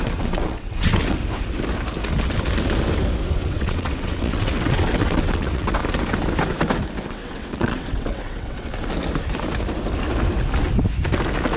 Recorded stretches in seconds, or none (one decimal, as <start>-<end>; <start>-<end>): 1.2-3.3; 5.8-7.1; 8.7-11.6